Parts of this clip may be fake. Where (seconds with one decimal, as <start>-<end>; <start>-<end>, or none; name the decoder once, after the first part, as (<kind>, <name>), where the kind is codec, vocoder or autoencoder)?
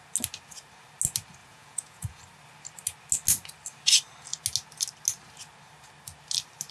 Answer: 1.4-2.2 (vocoder, Vocos)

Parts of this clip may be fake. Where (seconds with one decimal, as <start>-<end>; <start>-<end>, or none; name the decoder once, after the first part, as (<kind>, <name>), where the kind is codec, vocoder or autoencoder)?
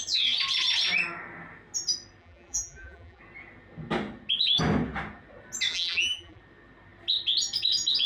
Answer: 2.2-3.2 (vocoder, BigVGAN v2); 5.7-6.4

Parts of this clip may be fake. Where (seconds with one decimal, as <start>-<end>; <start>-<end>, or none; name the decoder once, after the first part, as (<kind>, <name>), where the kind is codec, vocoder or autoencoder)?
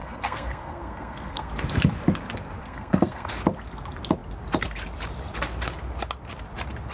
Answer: 0.0-1.5 (codec, SNAC); 2.6-3.3